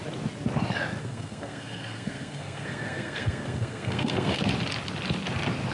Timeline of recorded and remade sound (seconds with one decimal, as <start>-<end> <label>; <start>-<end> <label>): 0.0-1.0 recorded; 1.0-4.4 remade; 4.4-5.7 recorded